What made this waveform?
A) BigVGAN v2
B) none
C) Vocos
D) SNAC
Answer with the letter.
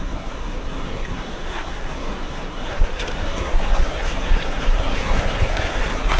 D